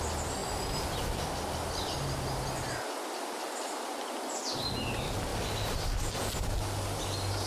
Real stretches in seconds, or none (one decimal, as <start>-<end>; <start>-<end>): 0.0-5.3; 6.0-7.5